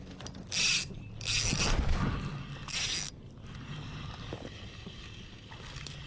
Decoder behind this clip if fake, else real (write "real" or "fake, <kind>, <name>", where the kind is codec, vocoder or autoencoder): real